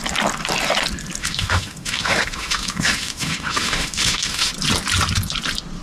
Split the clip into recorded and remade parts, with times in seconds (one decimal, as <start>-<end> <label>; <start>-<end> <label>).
0.0-1.2 recorded; 1.2-4.5 remade; 4.5-5.8 recorded